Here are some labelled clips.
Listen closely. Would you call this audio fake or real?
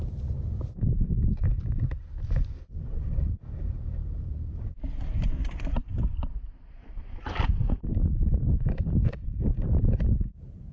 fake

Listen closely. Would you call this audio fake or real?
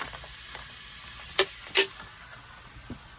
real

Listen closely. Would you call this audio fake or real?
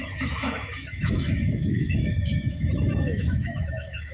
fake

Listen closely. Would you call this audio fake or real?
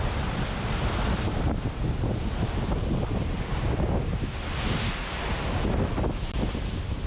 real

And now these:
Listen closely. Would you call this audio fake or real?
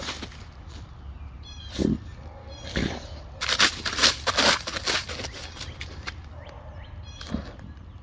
real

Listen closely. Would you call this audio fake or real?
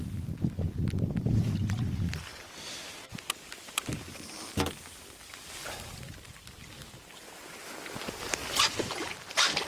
real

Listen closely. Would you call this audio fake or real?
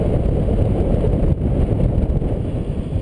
real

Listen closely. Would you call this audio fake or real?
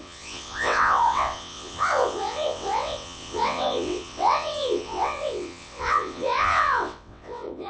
fake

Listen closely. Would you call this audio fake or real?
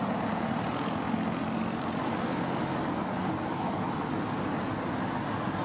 real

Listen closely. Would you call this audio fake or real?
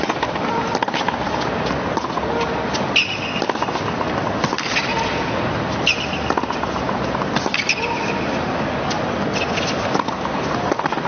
real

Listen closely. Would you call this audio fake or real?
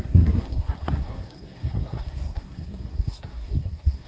fake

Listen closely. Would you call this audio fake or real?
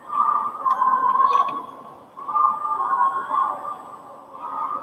real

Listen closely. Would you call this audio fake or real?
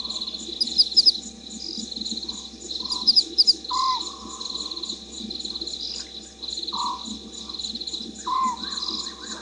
real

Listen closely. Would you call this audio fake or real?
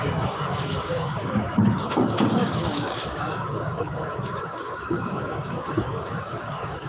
fake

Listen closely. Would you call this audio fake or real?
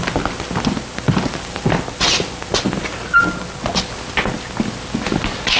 real